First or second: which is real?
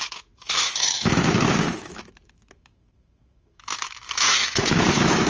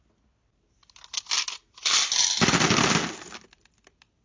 second